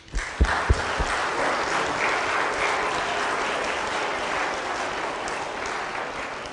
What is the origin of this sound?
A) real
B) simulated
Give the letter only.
A